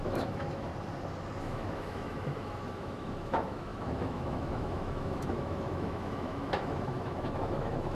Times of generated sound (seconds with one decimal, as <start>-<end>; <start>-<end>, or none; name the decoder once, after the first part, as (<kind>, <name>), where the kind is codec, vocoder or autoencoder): 0.0-0.7 (autoencoder, DAC-VAE); 1.4-7.9